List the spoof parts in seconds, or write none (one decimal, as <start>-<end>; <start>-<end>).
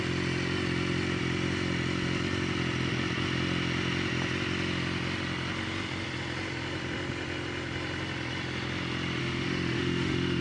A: 9.2-10.4